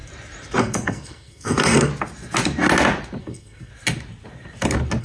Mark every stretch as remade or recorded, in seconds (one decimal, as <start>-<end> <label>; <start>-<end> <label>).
0.0-0.6 recorded; 0.6-1.9 remade; 1.9-3.2 recorded; 3.2-3.7 remade; 3.7-5.0 recorded